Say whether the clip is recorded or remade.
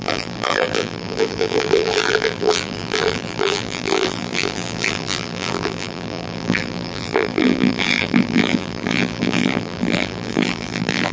remade